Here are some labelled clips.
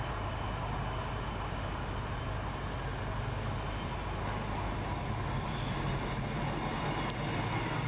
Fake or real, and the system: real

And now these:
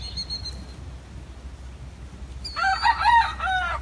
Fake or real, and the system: real